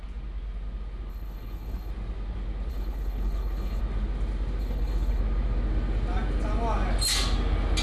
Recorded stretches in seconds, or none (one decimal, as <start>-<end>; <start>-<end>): 0.0-1.1; 1.9-2.7; 3.8-4.6; 5.2-7.8